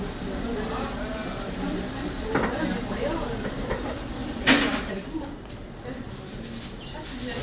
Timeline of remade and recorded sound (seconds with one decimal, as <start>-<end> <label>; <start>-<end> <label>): 0.0-1.2 recorded; 1.2-2.3 remade; 2.3-4.2 recorded; 4.2-7.0 remade; 7.0-7.4 recorded